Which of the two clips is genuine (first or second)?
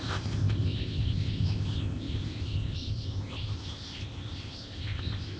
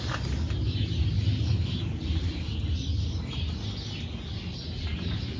second